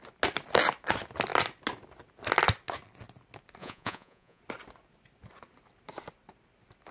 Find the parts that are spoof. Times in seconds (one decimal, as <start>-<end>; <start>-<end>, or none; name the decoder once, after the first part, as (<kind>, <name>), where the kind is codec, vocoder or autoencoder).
3.6-4.4 (vocoder, Vocos)